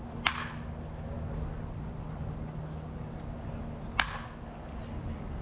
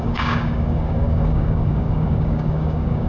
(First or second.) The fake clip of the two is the second